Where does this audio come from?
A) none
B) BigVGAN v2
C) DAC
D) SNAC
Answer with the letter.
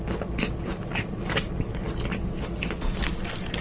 A